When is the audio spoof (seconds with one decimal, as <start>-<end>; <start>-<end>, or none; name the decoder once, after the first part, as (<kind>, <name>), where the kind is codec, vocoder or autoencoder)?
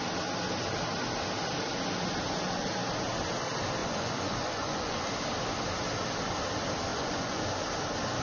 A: 3.8-5.1 (vocoder, Vocos); 6.9-7.4